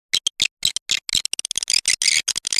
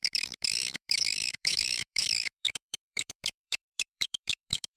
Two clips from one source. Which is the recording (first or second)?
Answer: first